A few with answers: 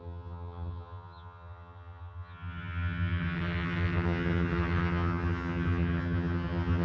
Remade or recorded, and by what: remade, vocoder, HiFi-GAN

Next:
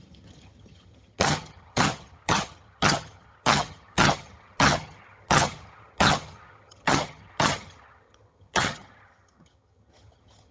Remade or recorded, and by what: remade, vocoder, HiFi-GAN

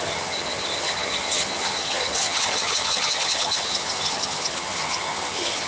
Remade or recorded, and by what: remade, vocoder, HiFi-GAN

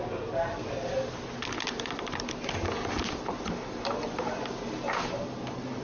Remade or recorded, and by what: recorded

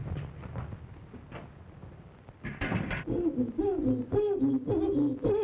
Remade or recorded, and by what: recorded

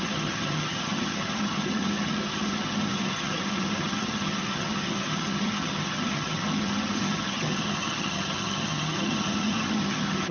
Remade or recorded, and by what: remade, vocoder, HiFi-GAN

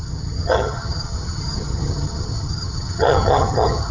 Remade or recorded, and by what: remade, vocoder, HiFi-GAN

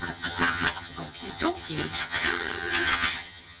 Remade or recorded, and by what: remade, vocoder, HiFi-GAN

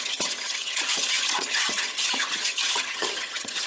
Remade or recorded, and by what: remade, vocoder, HiFi-GAN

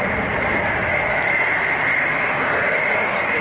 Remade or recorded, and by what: recorded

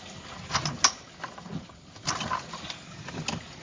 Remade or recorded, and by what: recorded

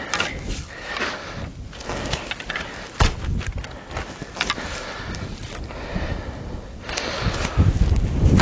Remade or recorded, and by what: recorded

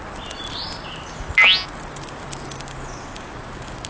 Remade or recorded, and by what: recorded